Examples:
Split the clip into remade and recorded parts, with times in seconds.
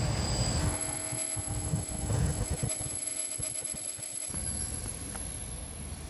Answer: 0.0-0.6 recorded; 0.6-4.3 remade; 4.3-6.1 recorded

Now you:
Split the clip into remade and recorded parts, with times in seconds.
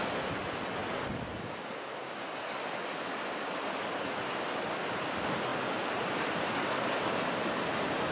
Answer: 0.0-8.1 recorded